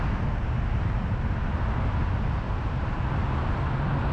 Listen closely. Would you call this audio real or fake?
real